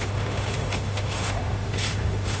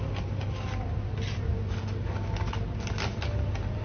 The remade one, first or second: first